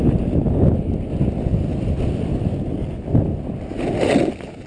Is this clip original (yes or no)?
yes